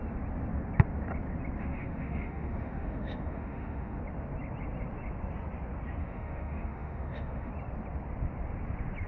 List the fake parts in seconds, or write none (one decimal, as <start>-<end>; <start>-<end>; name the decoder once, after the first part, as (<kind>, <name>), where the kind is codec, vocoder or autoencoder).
1.6-4.0 (autoencoder, DAC-VAE); 6.0-7.5